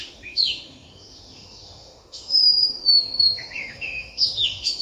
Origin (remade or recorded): remade